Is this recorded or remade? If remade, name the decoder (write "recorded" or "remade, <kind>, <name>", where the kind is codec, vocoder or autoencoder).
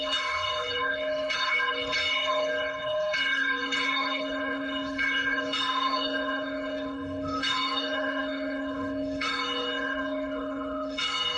remade, codec, HILCodec